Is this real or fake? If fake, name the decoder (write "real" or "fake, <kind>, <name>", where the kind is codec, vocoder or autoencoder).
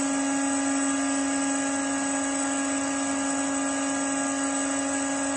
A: real